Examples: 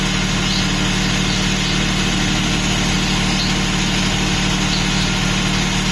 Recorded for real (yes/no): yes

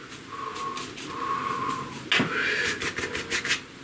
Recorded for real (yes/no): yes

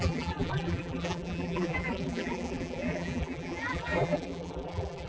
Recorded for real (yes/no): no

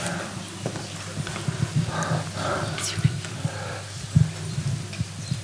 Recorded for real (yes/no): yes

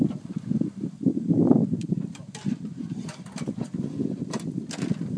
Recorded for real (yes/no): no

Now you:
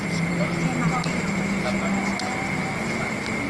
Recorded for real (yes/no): yes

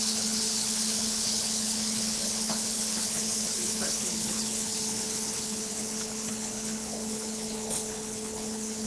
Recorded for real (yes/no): no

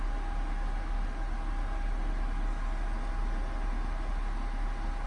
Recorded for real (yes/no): yes